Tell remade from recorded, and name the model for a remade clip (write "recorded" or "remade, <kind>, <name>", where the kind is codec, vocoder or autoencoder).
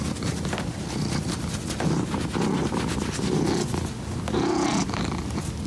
recorded